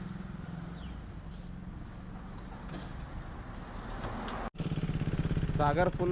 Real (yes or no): yes